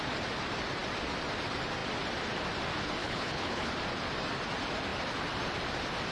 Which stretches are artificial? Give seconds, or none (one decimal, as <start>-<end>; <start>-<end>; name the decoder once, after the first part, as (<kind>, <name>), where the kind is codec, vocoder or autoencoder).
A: 3.0-3.7 (codec, HILCodec)

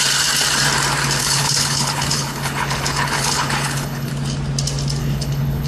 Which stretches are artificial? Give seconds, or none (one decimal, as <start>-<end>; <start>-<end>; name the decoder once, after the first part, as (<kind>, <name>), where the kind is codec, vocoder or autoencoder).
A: 1.2-4.1 (codec, HILCodec); 5.0-5.7

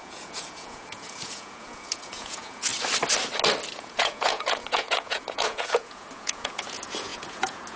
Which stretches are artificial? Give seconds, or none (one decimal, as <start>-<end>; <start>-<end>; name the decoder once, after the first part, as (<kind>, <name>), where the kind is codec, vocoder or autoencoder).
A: 0.0-2.7 (vocoder, Vocos); 3.7-7.8

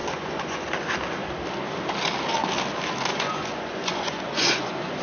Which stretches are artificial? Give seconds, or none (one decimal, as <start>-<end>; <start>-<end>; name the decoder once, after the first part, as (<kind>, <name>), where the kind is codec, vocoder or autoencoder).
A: 0.0-0.6 (vocoder, Vocos); 3.1-5.0